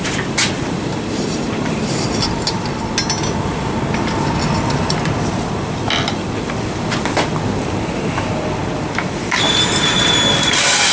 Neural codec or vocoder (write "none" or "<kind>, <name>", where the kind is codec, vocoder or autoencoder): none